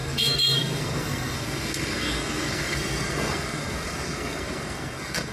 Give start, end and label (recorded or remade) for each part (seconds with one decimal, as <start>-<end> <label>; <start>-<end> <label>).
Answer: 0.0-5.3 remade